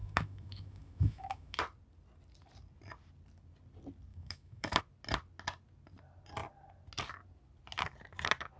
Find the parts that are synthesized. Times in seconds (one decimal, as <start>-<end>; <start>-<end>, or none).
0.0-1.6; 4.1-4.8